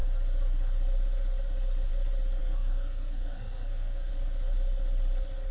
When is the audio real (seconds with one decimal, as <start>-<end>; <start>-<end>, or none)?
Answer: 0.0-2.4; 4.1-5.5